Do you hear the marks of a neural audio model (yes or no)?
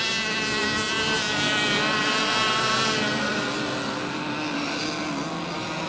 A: no